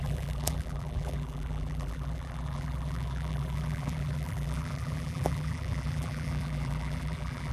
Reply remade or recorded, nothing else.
remade